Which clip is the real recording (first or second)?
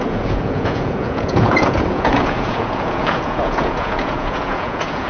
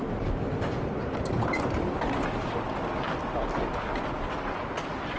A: second